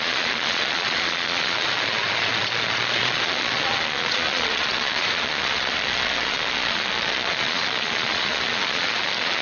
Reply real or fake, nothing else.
fake